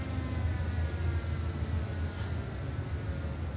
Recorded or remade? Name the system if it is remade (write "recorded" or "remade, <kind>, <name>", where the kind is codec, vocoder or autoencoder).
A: recorded